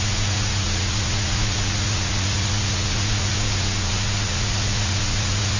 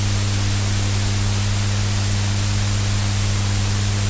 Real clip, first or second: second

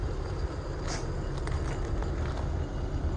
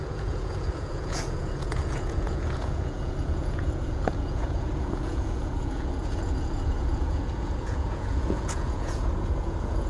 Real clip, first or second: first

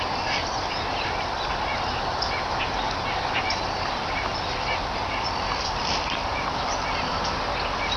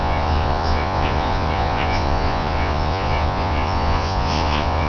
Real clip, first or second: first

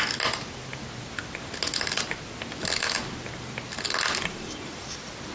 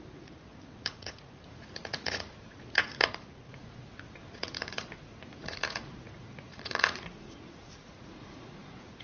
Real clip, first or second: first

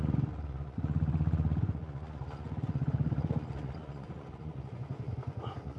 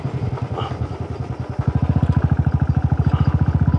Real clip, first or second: second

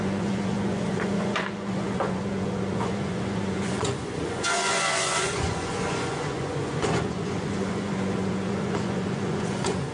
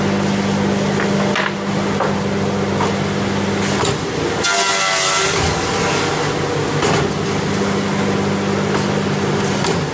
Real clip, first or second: second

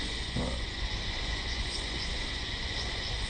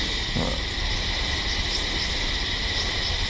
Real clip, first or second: second